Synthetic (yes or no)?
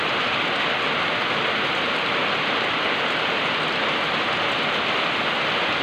no